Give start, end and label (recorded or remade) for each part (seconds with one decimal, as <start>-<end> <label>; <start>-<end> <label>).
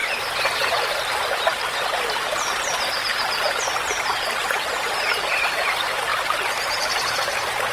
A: 0.0-0.9 remade; 0.9-6.1 recorded; 6.1-7.2 remade; 7.2-7.7 recorded